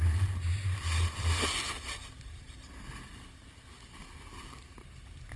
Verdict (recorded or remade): recorded